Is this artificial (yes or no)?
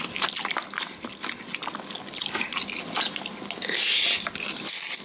no